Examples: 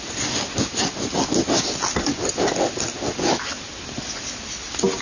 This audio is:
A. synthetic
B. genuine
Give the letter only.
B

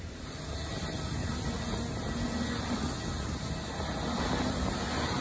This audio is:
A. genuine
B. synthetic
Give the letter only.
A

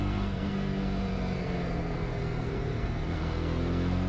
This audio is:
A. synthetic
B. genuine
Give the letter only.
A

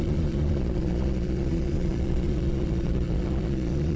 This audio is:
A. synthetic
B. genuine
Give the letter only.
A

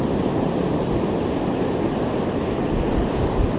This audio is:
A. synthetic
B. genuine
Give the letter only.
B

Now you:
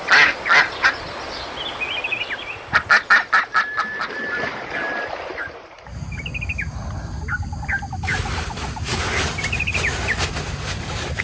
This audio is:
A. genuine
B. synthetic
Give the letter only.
A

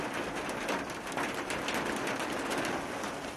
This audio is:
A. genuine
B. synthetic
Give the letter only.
A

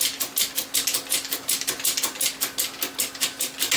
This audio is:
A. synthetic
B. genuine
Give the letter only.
B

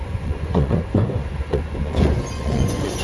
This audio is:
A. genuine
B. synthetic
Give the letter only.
B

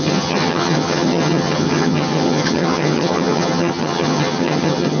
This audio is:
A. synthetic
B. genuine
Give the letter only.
A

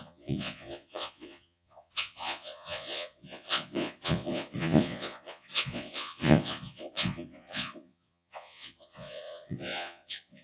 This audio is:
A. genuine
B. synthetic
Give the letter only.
B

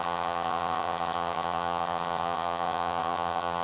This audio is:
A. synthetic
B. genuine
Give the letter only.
A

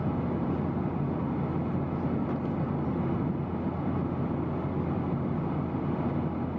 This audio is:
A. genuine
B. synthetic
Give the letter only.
A